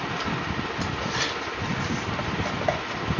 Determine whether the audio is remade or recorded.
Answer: recorded